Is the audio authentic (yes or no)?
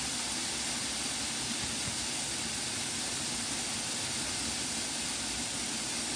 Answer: yes